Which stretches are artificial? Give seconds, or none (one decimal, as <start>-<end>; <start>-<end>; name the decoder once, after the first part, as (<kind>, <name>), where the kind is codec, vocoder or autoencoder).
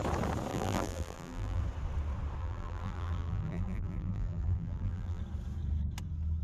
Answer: 0.5-1.6 (vocoder, BigVGAN v2); 2.4-5.2